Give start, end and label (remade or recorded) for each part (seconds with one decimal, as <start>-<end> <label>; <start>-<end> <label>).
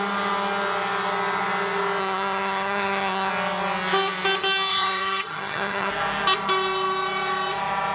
0.0-2.0 recorded; 2.0-3.3 remade; 3.3-4.7 recorded; 4.7-5.9 remade; 5.9-7.9 recorded